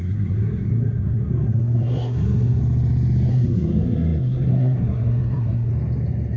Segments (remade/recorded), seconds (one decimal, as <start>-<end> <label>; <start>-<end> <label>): 0.0-2.6 remade; 2.6-3.3 recorded; 3.3-5.7 remade; 5.7-6.4 recorded